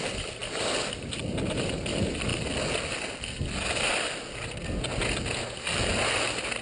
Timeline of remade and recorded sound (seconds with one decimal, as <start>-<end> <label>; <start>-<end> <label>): 0.0-6.6 recorded